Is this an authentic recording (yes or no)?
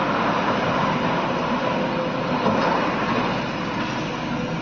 yes